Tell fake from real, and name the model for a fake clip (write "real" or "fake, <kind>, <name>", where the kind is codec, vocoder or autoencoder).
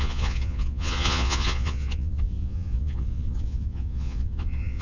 fake, vocoder, Vocos